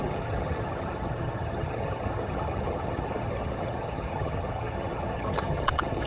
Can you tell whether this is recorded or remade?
remade